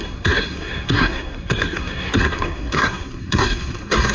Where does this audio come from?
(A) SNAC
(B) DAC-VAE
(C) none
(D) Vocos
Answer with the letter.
A